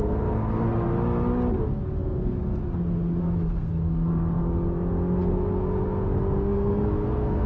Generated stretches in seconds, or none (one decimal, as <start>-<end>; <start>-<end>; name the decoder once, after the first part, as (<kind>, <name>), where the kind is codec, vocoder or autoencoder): 0.0-0.9 (codec, SNAC); 2.0-2.6; 3.2-4.1; 5.2-7.5